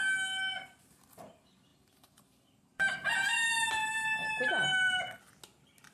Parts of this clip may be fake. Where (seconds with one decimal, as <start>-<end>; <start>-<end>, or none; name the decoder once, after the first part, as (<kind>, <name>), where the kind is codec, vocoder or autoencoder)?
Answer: 1.7-5.2 (vocoder, BigVGAN v2)